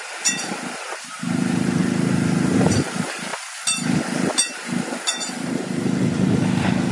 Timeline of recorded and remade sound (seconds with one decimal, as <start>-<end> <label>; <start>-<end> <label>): 0.0-1.8 remade; 1.8-2.9 recorded; 2.9-3.3 remade; 3.3-6.9 recorded